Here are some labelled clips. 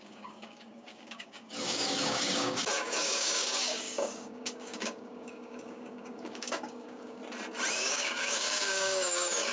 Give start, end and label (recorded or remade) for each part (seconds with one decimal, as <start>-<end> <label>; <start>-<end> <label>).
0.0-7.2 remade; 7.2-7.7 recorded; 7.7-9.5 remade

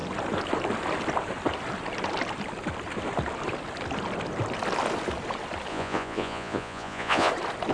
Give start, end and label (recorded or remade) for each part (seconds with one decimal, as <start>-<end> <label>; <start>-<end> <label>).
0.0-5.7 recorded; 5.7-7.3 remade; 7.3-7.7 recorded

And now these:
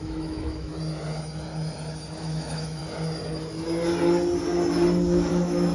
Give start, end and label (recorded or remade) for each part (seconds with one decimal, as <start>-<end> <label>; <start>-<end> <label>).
0.0-0.7 remade; 0.7-2.2 recorded; 2.2-2.8 remade; 2.8-5.3 recorded; 5.3-5.7 remade